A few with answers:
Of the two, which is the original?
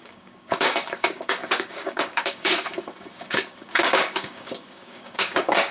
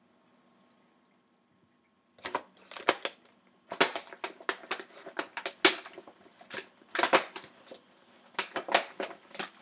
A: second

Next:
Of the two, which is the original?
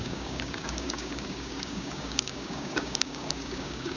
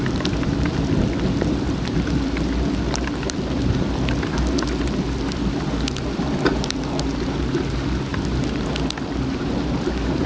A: second